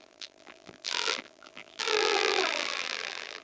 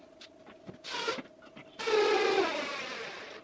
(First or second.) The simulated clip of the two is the first